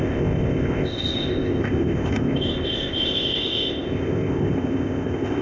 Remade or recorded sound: remade